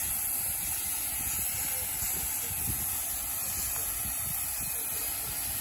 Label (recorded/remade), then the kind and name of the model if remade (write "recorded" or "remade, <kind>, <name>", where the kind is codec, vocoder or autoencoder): recorded